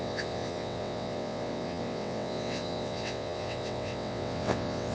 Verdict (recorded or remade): remade